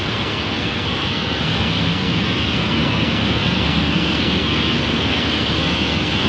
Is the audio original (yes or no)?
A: no